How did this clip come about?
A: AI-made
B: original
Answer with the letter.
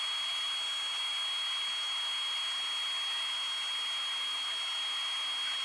B